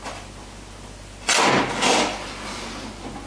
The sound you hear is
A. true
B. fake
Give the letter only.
A